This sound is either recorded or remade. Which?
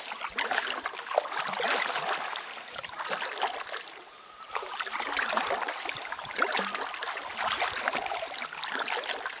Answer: recorded